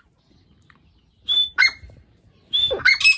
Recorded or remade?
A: recorded